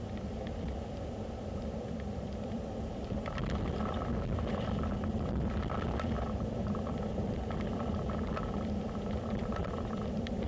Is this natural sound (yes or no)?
no